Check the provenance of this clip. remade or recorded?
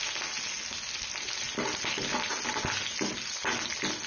recorded